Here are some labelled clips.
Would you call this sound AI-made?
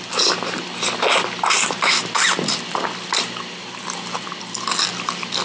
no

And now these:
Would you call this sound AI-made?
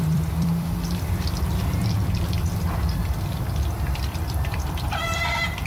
yes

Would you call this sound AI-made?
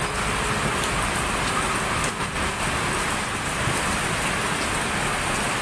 no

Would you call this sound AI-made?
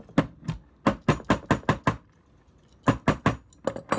no